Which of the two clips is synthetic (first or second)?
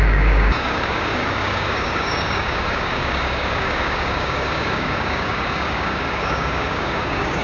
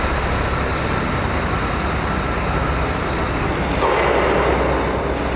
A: first